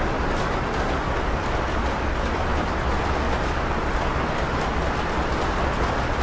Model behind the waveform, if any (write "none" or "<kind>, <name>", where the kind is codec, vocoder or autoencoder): none